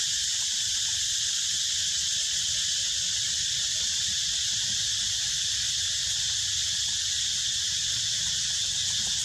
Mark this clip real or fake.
real